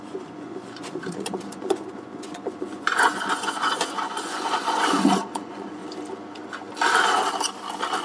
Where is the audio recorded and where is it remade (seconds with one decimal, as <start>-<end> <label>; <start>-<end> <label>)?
0.0-5.8 remade; 5.8-8.0 recorded